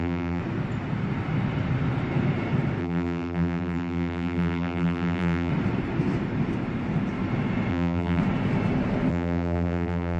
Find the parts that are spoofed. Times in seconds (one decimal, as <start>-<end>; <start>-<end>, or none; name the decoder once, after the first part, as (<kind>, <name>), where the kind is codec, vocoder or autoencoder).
0.0-0.4 (vocoder, BigVGAN v2); 2.8-5.5; 7.7-8.2; 9.1-10.2